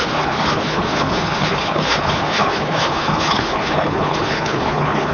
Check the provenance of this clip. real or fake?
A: fake